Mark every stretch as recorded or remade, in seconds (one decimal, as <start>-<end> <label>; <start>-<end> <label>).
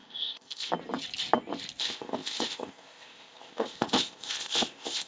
0.0-0.7 remade; 0.7-1.8 recorded; 1.8-5.1 remade